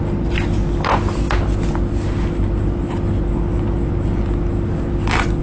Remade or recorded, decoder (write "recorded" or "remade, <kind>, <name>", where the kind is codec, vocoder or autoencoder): recorded